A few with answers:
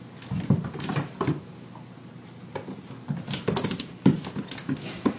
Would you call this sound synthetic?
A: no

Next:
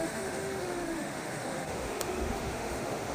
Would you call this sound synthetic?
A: yes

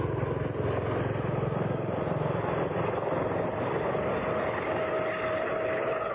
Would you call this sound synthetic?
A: no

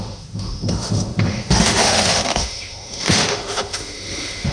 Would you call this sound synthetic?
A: yes